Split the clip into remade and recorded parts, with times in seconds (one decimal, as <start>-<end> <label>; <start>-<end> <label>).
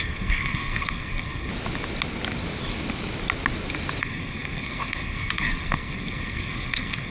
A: 0.0-1.5 remade; 1.5-4.0 recorded; 4.0-7.1 remade